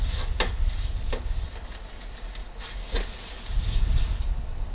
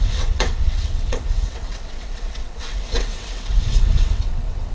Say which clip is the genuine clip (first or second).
first